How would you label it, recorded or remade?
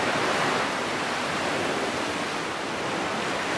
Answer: recorded